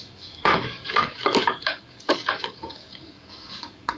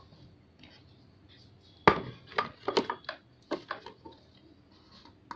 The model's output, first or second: first